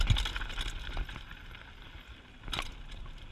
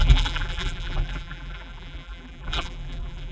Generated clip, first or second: second